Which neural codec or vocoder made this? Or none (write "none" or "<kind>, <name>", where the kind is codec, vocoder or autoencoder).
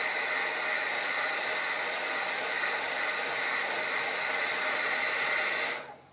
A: none